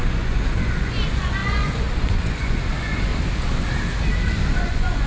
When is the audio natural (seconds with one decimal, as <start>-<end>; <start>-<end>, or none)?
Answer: 3.1-4.6